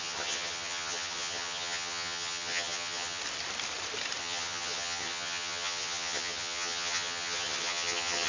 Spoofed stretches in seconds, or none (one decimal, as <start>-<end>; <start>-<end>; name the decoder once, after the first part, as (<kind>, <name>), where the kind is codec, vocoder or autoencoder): 0.0-3.2 (vocoder, HiFi-GAN); 4.2-8.3